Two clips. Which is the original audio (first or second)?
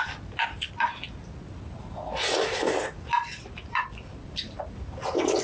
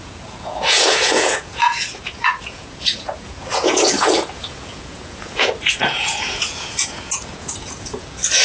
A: first